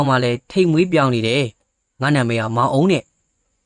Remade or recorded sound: remade